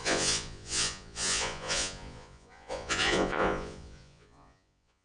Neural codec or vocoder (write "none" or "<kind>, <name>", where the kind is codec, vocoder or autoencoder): vocoder, Vocos